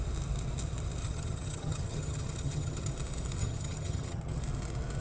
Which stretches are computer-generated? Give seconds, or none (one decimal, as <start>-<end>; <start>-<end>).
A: 1.0-2.9; 3.4-4.4